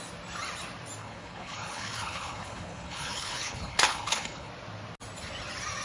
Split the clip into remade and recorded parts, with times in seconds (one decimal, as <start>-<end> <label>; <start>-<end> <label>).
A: 0.0-1.0 recorded; 1.0-4.5 remade; 4.5-5.8 recorded